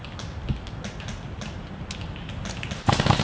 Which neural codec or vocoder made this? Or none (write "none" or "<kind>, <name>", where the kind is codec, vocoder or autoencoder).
none